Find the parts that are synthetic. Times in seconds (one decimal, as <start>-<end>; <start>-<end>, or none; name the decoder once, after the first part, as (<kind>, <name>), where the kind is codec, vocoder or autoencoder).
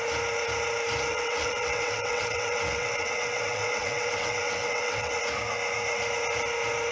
1.1-5.2 (vocoder, WaveNeXt)